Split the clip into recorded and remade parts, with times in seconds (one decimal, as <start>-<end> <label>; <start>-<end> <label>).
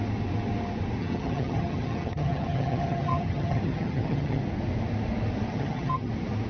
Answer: 0.0-1.0 recorded; 1.0-4.4 remade; 4.4-5.5 recorded; 5.5-6.1 remade; 6.1-6.5 recorded